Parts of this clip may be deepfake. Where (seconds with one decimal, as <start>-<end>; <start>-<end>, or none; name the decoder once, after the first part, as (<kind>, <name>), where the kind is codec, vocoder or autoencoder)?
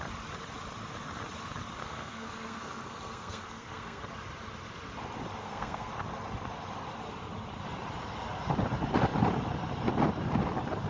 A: 1.8-4.0 (codec, SNAC); 5.4-5.9